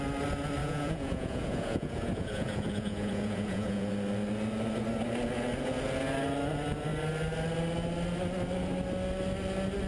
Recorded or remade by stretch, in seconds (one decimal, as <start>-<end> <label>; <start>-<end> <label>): 0.0-0.6 recorded; 0.6-3.9 remade; 3.9-9.9 recorded